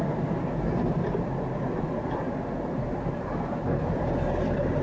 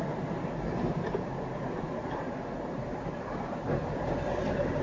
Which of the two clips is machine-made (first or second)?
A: second